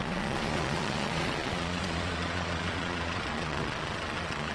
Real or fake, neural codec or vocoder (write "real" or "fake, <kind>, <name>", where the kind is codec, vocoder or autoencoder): fake, vocoder, Vocos